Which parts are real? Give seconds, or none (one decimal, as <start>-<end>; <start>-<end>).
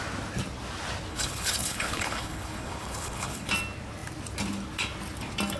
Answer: 0.0-1.1; 3.5-5.6